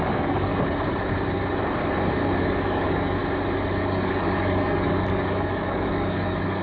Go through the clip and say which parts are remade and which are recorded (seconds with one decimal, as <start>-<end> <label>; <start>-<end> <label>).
0.0-0.5 remade; 0.5-2.4 recorded; 2.4-3.2 remade; 3.2-3.8 recorded; 3.8-6.6 remade